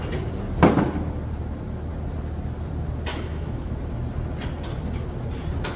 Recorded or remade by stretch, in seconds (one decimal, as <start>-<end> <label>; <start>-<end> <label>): 0.0-3.1 recorded; 3.1-3.7 remade; 3.7-5.8 recorded